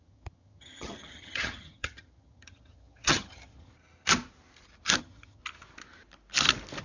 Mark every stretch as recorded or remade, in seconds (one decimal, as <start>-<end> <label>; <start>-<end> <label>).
0.0-3.7 remade; 3.7-5.0 recorded; 5.0-5.4 remade; 5.4-6.8 recorded